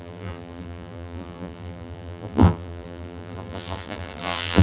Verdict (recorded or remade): remade